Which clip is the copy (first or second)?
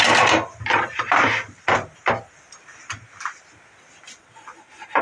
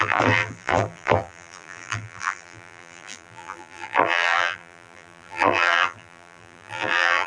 second